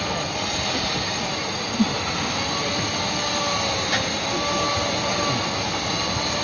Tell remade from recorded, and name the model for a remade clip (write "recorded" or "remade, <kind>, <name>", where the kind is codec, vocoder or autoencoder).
recorded